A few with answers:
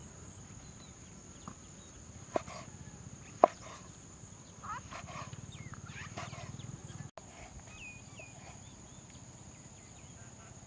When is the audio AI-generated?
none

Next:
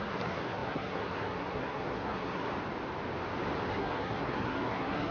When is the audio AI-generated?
0.0-2.5 (codec, SNAC); 3.7-5.1

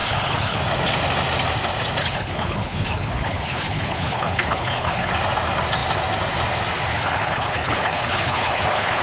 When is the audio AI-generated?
0.0-0.6 (codec, HILCodec); 2.0-5.1; 6.9-9.0

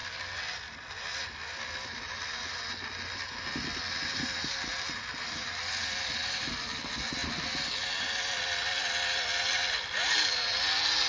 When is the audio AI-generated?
none